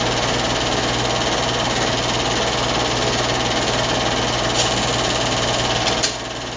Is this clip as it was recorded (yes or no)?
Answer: yes